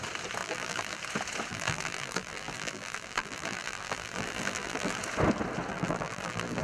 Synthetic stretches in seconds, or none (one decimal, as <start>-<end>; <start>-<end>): 0.4-1.0; 1.5-5.0; 5.7-6.6